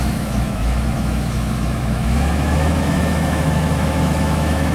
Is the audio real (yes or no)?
no